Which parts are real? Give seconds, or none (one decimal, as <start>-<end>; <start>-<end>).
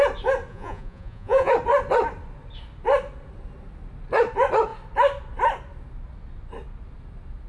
0.0-0.5; 1.5-7.5